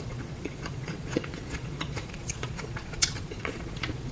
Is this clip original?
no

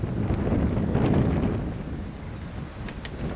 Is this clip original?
yes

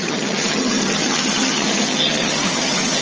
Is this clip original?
no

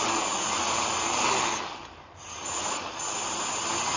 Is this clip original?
yes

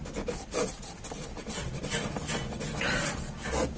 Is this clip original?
yes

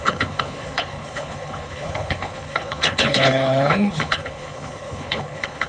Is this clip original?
no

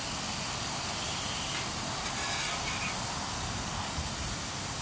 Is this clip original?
yes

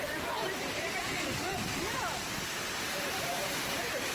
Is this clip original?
no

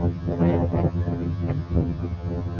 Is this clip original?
no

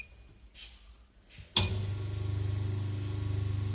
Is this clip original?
yes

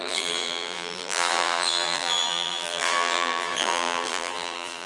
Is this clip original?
no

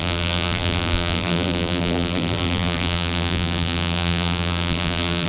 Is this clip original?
no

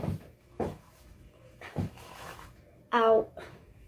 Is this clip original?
no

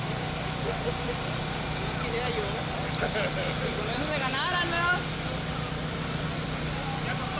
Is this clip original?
yes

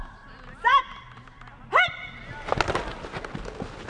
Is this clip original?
yes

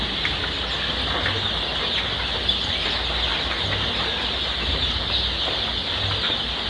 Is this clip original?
yes